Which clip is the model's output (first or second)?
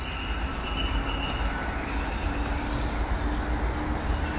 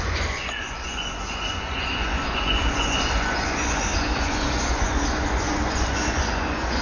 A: second